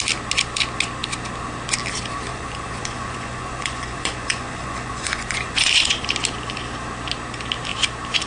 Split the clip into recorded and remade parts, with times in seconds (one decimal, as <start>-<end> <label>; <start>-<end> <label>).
0.0-2.3 recorded; 2.3-6.1 remade; 6.1-8.3 recorded